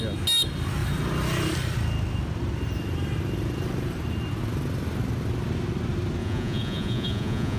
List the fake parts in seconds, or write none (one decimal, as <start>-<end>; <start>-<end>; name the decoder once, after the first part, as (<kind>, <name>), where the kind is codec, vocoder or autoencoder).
6.2-7.6 (vocoder, Vocos)